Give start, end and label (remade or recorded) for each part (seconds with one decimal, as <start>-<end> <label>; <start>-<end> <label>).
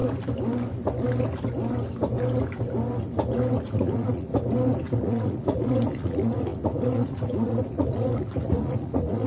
0.0-3.6 recorded; 3.6-4.3 remade; 4.3-5.0 recorded; 5.0-9.3 remade